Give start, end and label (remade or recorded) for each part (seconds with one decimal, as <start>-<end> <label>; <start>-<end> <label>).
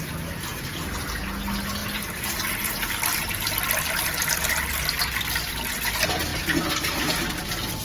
0.0-0.5 recorded; 0.5-1.0 remade; 1.0-1.8 recorded; 1.8-2.9 remade; 2.9-7.8 recorded